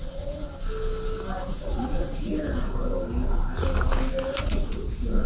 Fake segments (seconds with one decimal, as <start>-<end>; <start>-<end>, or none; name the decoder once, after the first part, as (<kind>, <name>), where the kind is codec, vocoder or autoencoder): 0.0-0.5 (vocoder, Vocos); 1.5-2.3; 4.3-5.3